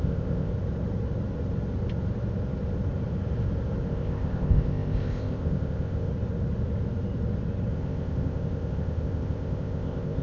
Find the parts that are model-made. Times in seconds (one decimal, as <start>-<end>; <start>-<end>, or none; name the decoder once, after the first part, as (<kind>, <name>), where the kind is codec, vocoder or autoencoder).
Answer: 0.0-0.5 (codec, ZipCodec); 3.9-6.1; 7.7-10.2